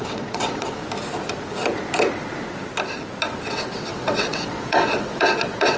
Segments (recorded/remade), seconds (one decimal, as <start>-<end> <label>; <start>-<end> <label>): 0.0-0.8 remade; 0.8-3.5 recorded; 3.5-5.8 remade